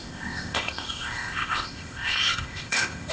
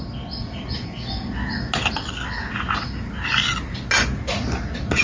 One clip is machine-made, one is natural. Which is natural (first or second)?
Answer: second